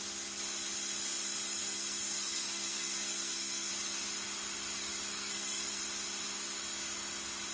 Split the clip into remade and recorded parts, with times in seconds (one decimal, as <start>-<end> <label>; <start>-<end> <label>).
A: 0.0-1.6 recorded; 1.6-3.7 remade; 3.7-5.1 recorded; 5.1-5.8 remade; 5.8-7.5 recorded

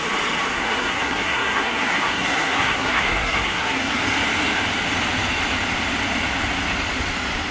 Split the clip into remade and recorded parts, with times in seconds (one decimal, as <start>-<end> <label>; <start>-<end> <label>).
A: 0.0-0.5 recorded; 0.5-4.0 remade; 4.0-7.5 recorded

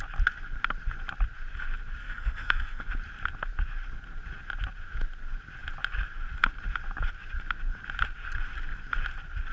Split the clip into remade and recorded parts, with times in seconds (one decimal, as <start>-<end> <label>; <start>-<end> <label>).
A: 0.0-2.0 recorded; 2.0-2.8 remade; 2.8-9.5 recorded

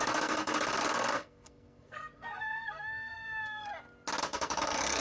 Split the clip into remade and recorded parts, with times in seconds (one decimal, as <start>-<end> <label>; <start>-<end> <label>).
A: 0.0-3.7 remade; 3.7-4.2 recorded; 4.2-5.0 remade

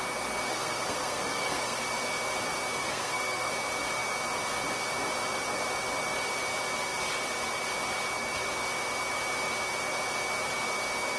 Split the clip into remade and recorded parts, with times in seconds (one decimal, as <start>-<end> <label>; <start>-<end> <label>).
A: 0.0-0.5 recorded; 0.5-1.8 remade; 1.8-2.8 recorded; 2.8-3.5 remade; 3.5-11.2 recorded

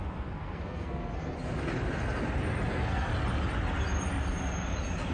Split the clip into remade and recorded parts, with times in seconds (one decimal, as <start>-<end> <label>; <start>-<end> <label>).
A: 0.0-1.3 remade; 1.3-2.7 recorded; 2.7-3.1 remade; 3.1-5.1 recorded